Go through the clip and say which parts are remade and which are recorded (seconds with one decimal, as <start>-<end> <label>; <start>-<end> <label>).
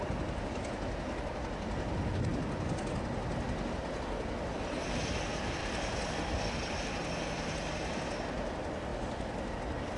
0.0-10.0 recorded